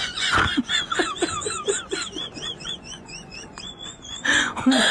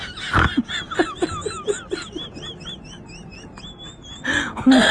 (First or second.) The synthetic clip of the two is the first